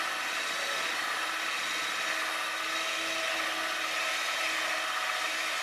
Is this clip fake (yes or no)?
no